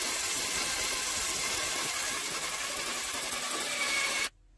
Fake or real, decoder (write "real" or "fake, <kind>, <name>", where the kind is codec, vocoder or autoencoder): real